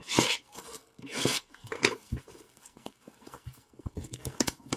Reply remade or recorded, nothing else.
remade